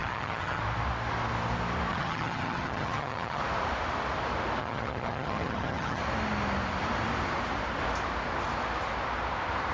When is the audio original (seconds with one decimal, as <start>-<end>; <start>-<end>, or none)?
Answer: 0.6-1.9; 3.4-4.6; 6.0-9.7